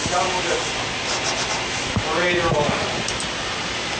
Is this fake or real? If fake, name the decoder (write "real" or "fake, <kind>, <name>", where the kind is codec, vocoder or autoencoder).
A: real